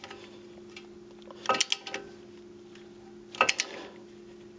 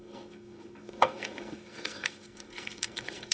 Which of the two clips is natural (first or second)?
first